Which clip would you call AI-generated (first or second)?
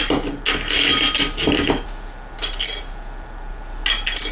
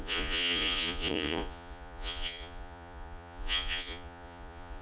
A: second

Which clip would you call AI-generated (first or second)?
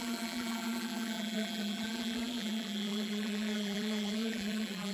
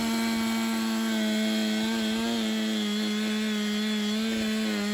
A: first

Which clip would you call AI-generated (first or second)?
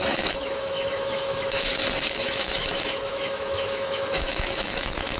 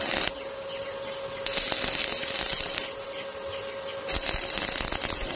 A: first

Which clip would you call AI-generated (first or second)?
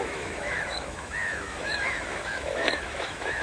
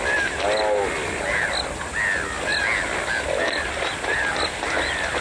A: first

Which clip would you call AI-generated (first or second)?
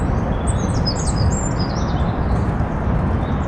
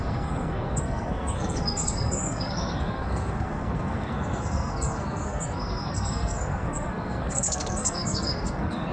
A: second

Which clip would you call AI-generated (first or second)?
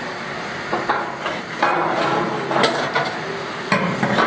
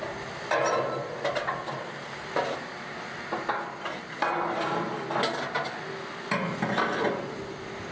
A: first